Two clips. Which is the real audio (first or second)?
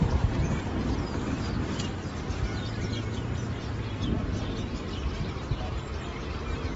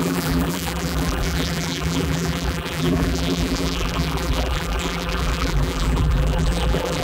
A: first